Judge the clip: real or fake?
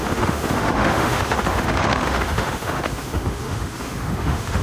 fake